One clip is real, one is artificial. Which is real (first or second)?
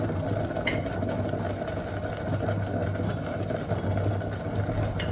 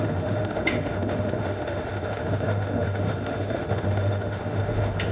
first